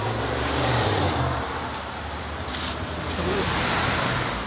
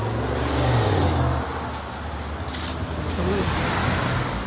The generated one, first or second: first